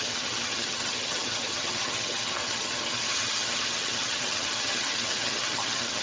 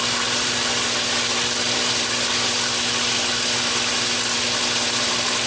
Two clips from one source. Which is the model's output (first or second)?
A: first